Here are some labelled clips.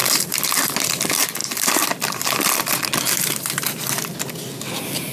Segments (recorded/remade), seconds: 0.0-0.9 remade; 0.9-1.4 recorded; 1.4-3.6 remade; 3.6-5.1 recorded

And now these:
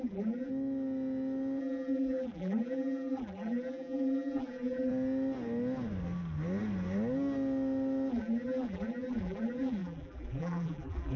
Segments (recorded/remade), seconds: 0.0-0.5 remade; 0.5-1.6 recorded; 1.6-4.9 remade; 4.9-8.1 recorded; 8.1-11.2 remade

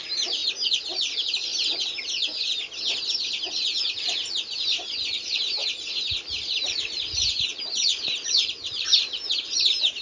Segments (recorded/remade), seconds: 0.0-0.4 remade; 0.4-1.0 recorded; 1.0-1.5 remade; 1.5-3.9 recorded; 3.9-10.0 remade

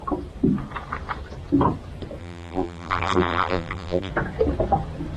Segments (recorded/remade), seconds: 0.0-2.2 recorded; 2.2-4.1 remade; 4.1-5.2 recorded